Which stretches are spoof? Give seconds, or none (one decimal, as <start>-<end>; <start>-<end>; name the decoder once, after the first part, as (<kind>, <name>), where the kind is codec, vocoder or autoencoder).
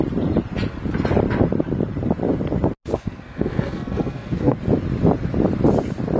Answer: 2.9-4.6 (codec, SNAC)